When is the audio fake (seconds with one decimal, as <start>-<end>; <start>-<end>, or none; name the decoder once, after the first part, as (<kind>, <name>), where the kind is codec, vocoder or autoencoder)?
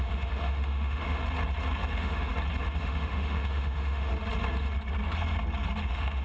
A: 0.0-1.2 (autoencoder, DAC-VAE); 1.9-2.3; 2.8-4.1; 5.8-6.2